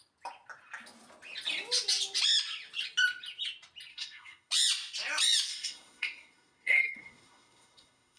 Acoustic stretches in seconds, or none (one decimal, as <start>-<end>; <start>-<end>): 0.0-3.9; 4.5-5.5